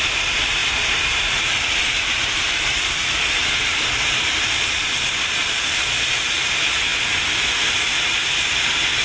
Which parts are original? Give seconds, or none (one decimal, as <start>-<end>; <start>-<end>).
6.9-9.0